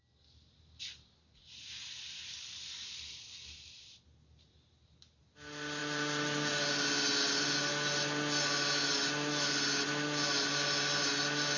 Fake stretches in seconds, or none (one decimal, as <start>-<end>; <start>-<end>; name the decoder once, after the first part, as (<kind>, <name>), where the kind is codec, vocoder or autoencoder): none